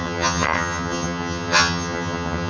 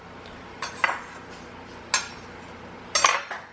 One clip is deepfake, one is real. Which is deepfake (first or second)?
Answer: first